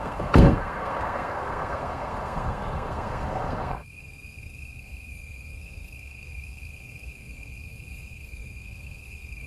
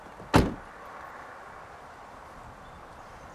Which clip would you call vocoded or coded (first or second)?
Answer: first